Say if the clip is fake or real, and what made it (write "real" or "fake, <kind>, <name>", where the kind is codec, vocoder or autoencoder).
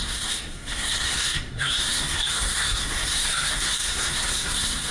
fake, codec, SNAC